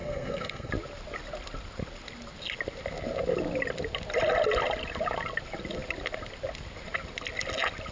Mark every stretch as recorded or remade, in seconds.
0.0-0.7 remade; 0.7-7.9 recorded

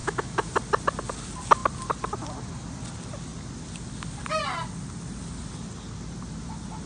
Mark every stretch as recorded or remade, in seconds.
0.0-0.5 remade; 0.5-6.9 recorded

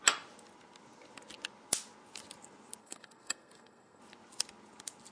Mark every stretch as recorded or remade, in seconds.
0.0-2.8 recorded; 2.8-4.0 remade; 4.0-5.1 recorded